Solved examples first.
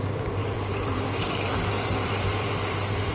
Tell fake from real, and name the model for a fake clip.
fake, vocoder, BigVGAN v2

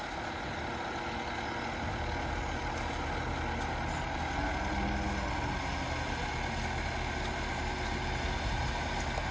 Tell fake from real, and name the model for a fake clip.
real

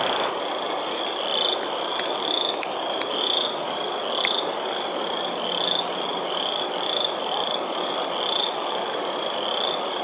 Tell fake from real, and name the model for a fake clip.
real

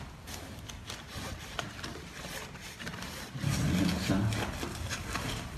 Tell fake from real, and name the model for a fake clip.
real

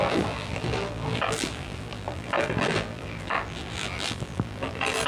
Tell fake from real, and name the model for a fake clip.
fake, vocoder, BigVGAN v2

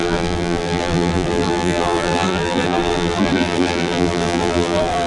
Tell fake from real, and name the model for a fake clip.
fake, vocoder, BigVGAN v2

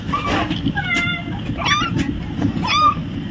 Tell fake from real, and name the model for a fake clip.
real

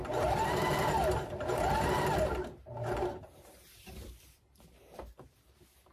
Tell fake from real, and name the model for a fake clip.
fake, vocoder, BigVGAN v2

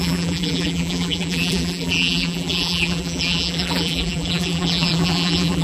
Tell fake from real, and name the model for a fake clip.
fake, vocoder, BigVGAN v2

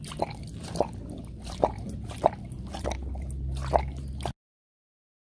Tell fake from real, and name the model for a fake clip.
real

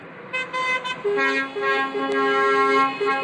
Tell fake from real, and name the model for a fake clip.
real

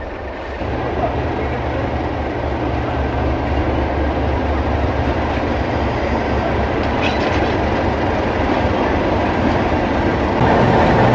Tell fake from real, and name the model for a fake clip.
real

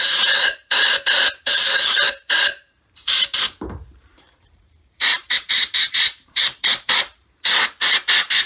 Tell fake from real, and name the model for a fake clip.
fake, vocoder, BigVGAN v2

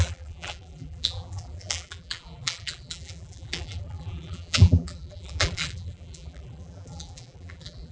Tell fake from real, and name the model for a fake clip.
fake, vocoder, BigVGAN v2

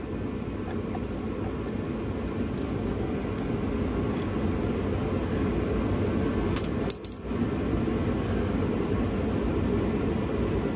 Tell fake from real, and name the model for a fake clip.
real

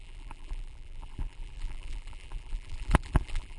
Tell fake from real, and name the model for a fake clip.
fake, vocoder, BigVGAN v2